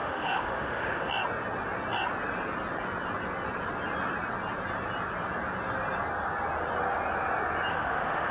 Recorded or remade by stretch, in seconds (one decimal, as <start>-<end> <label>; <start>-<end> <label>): 0.0-1.1 remade; 1.1-7.7 recorded; 7.7-8.3 remade